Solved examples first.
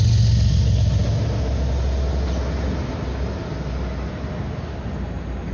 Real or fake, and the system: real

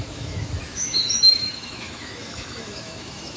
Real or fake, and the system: fake, autoencoder, DAC-VAE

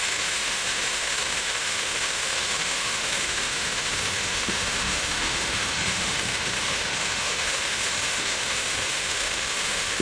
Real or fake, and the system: fake, autoencoder, DAC-VAE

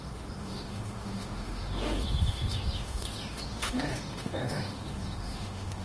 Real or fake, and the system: fake, autoencoder, DAC-VAE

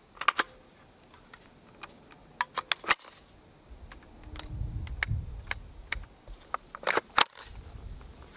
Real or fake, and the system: real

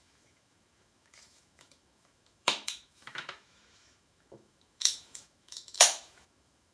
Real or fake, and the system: fake, autoencoder, DAC-VAE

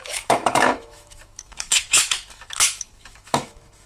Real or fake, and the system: fake, autoencoder, DAC-VAE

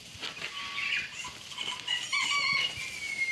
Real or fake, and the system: real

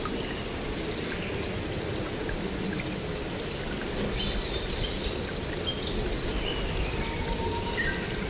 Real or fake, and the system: real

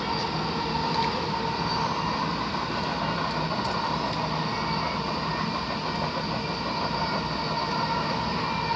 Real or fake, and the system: real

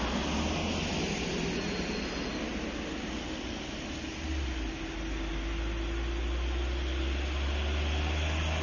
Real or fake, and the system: real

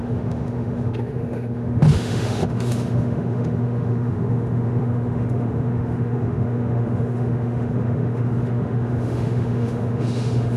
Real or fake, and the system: fake, autoencoder, DAC-VAE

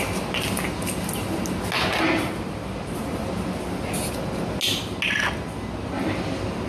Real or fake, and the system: real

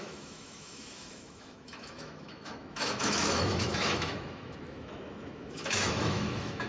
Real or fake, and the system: fake, autoencoder, DAC-VAE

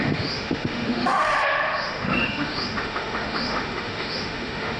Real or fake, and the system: fake, autoencoder, DAC-VAE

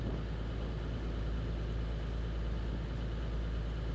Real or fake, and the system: real